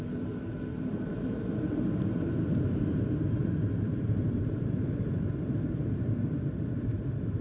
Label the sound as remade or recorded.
remade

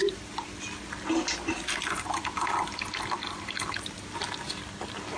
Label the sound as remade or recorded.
recorded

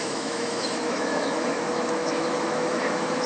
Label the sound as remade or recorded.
remade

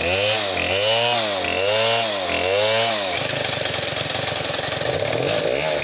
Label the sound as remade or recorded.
recorded